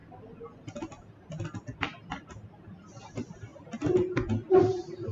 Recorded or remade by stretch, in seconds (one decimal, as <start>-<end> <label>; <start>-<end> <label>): 0.0-5.1 recorded

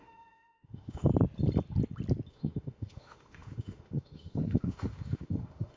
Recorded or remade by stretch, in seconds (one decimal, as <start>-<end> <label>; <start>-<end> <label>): 0.0-1.1 remade; 1.1-2.3 recorded; 2.3-5.8 remade

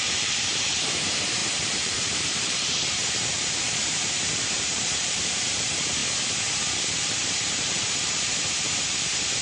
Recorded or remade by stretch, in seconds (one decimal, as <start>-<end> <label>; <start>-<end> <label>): 0.0-6.0 remade; 6.0-6.6 recorded; 6.6-9.4 remade